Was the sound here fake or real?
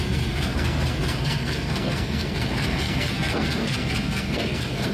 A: fake